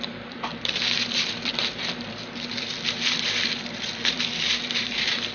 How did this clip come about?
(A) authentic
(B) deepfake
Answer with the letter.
B